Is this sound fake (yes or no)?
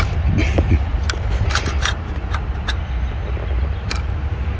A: no